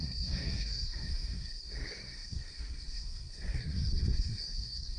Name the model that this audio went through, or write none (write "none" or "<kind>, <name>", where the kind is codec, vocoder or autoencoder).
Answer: codec, SNAC